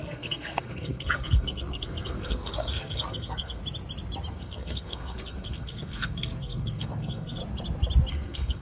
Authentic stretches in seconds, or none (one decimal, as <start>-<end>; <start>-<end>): 3.6-4.3; 7.4-8.1